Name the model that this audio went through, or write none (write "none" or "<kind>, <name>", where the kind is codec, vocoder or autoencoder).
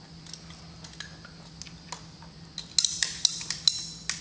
none